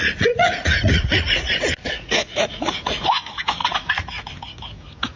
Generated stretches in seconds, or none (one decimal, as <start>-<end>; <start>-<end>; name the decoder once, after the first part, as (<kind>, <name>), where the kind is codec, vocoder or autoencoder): 0.0-3.1 (vocoder, Vocos); 3.6-4.3